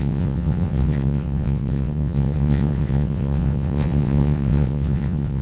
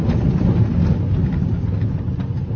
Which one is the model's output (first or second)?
first